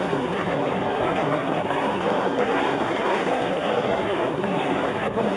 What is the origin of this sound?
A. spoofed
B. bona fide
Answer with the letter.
A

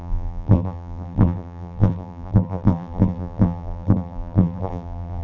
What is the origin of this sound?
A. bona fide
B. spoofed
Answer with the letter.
B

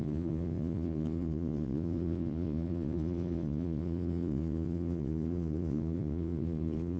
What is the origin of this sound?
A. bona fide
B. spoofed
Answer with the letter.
B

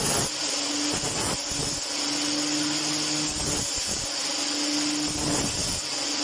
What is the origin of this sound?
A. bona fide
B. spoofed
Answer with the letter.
A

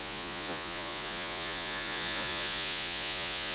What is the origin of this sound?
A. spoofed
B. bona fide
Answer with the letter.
A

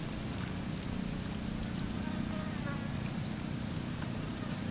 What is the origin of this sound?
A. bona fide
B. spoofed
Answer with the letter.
A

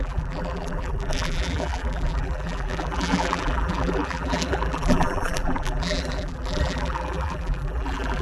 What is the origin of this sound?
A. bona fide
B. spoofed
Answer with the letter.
B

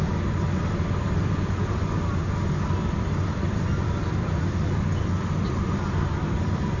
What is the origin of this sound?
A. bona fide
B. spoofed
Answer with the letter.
B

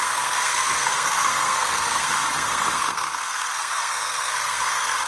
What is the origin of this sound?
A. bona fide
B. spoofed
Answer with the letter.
B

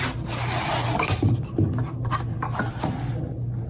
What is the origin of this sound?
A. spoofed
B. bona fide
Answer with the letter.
B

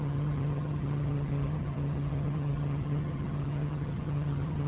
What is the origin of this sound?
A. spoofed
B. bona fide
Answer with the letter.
A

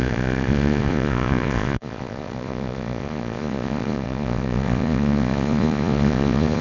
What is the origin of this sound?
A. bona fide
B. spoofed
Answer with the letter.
B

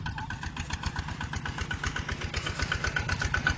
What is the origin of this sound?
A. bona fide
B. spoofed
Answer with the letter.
A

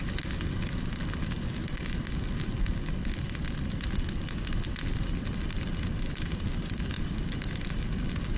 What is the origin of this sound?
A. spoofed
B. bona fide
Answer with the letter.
B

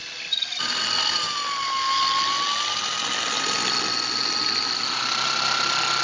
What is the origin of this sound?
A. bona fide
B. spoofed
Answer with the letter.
A